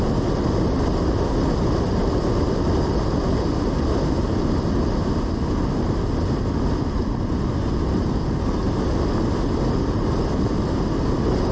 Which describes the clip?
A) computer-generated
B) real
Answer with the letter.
B